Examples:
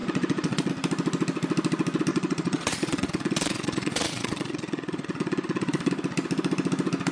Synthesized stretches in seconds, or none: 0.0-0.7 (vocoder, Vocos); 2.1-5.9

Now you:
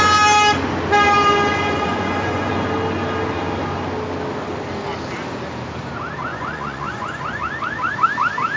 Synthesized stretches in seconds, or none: 1.5-2.5 (vocoder, Vocos); 6.3-7.4